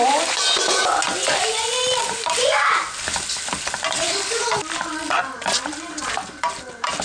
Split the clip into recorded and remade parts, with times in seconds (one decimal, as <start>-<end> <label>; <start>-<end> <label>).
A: 0.0-0.8 remade; 0.8-2.0 recorded; 2.0-2.8 remade; 2.8-5.7 recorded; 5.7-7.0 remade